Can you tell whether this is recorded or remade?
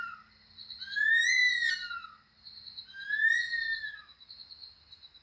recorded